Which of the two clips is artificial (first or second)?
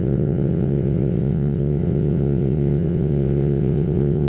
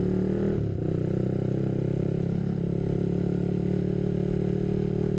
first